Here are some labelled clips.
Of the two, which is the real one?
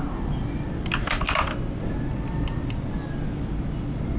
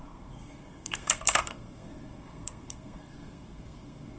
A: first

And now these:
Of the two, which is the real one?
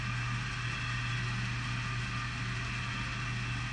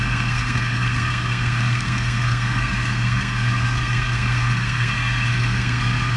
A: first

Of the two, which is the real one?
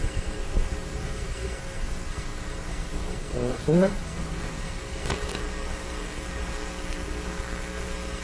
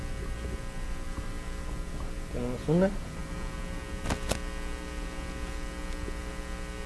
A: second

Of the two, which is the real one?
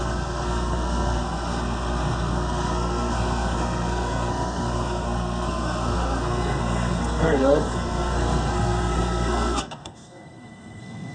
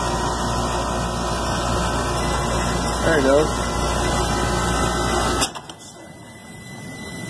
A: second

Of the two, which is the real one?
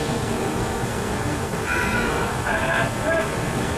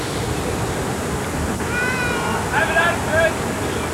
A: second